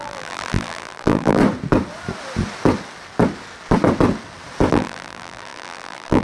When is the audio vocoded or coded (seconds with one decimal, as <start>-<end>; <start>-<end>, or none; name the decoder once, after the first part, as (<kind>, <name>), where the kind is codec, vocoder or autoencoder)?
0.0-1.4 (vocoder, BigVGAN v2); 4.7-6.2